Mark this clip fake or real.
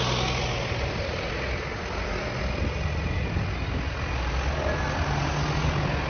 real